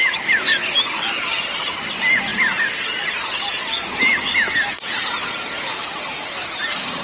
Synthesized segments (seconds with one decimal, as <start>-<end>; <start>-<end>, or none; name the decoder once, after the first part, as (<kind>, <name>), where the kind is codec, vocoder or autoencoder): none